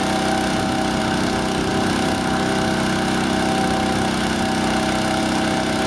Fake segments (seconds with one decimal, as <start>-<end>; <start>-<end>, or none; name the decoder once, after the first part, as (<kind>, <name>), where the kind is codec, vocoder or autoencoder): none